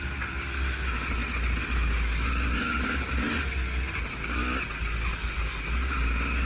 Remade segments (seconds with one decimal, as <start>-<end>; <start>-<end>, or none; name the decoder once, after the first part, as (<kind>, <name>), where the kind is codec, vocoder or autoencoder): none